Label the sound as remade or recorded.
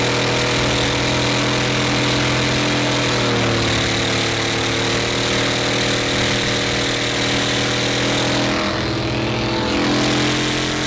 recorded